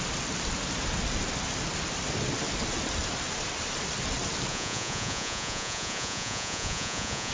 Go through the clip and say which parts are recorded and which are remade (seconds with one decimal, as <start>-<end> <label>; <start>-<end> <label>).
0.0-4.5 recorded; 4.5-7.3 remade